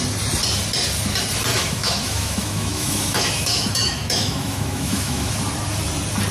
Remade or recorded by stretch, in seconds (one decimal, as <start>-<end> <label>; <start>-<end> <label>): 0.0-1.5 recorded; 1.5-5.3 remade; 5.3-6.3 recorded